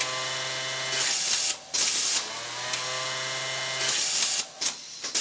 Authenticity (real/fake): real